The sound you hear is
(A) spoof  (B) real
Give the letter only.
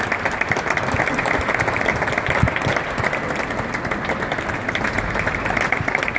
B